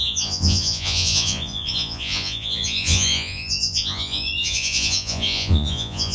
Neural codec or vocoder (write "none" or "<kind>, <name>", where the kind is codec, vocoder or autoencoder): vocoder, Vocos